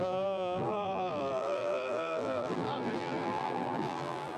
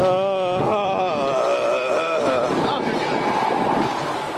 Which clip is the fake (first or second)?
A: first